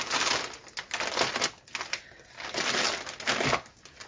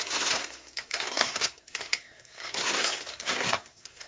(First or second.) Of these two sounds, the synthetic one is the second